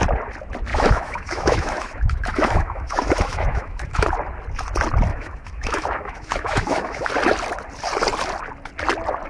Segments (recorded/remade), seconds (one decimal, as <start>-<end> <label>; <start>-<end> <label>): 0.0-0.7 recorded; 0.7-4.1 remade; 4.1-5.1 recorded; 5.1-7.1 remade; 7.1-9.3 recorded